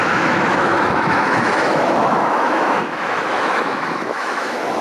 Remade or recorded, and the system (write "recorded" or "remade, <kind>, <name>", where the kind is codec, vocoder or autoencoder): remade, autoencoder, DAC-VAE